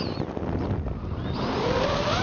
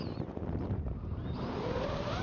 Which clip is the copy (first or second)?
second